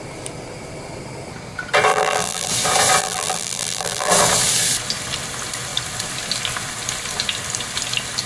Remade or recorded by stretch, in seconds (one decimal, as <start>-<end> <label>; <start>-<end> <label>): 0.0-1.9 recorded; 1.9-2.5 remade; 2.5-3.0 recorded; 3.0-4.1 remade; 4.1-8.3 recorded